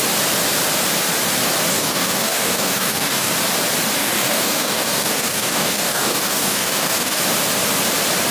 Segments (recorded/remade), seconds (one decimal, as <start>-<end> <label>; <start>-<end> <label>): 0.0-1.7 recorded; 1.7-3.3 remade; 3.3-4.0 recorded; 4.0-7.2 remade; 7.2-8.3 recorded